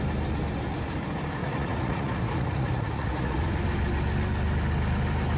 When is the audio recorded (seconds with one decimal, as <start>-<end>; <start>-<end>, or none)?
0.0-1.4; 3.4-5.4